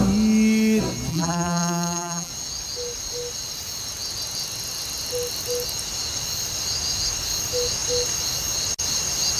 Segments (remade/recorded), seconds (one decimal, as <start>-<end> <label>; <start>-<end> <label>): 0.0-1.1 recorded; 1.1-2.3 remade; 2.3-9.4 recorded